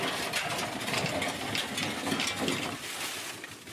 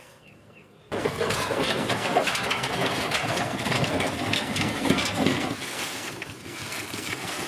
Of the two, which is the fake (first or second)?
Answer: second